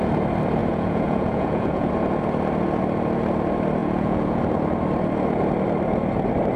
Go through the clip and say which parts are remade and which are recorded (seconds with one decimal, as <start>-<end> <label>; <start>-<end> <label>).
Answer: 0.0-0.6 recorded; 0.6-1.9 remade; 1.9-3.8 recorded; 3.8-4.4 remade; 4.4-6.6 recorded